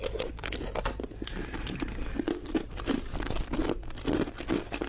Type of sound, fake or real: real